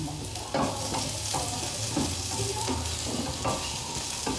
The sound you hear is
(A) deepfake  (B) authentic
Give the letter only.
B